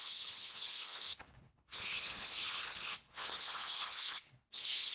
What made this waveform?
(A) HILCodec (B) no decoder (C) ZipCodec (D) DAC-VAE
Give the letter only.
A